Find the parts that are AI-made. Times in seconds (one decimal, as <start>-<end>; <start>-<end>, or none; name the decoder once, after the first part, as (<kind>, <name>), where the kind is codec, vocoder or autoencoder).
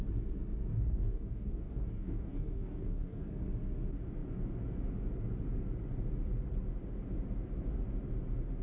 0.7-3.3 (codec, DAC)